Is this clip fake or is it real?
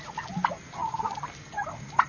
real